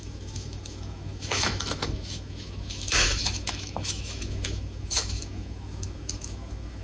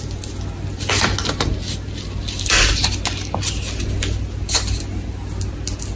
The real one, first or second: second